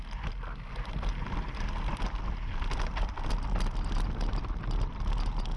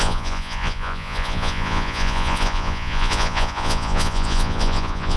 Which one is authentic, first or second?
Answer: first